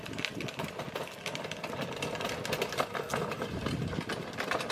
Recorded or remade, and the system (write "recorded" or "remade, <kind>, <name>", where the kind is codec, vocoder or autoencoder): recorded